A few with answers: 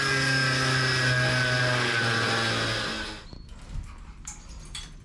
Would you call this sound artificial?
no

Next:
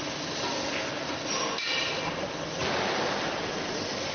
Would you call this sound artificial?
no